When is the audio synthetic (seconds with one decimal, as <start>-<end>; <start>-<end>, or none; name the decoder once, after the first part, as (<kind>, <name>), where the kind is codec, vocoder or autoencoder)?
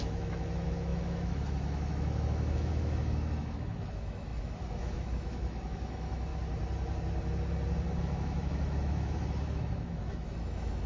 0.0-6.3 (autoencoder, DAC-VAE); 8.0-10.9